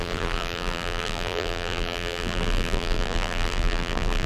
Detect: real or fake fake